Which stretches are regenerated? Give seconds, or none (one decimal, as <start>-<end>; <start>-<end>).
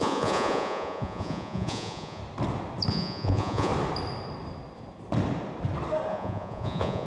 0.0-2.2; 2.9-3.7; 6.1-7.1